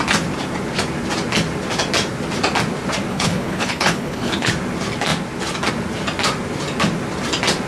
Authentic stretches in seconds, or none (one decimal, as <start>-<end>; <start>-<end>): 0.0-3.1; 4.5-7.7